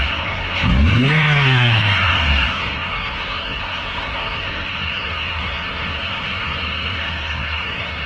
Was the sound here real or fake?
fake